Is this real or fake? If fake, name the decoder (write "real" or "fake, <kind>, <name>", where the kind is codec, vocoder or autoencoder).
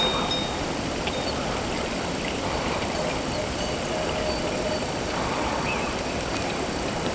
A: real